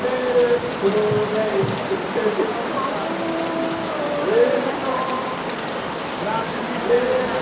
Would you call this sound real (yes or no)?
yes